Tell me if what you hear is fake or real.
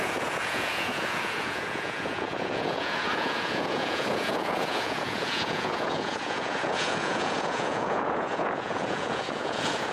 fake